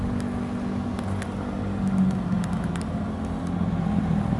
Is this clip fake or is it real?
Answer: real